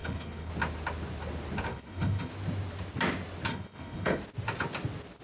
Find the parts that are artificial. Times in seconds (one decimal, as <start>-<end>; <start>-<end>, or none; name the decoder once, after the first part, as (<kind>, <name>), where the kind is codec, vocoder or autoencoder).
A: 0.0-0.5 (codec, HILCodec); 1.7-2.3; 3.5-4.2